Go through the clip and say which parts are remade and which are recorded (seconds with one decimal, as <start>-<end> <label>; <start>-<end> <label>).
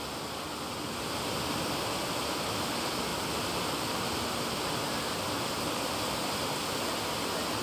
0.0-7.6 recorded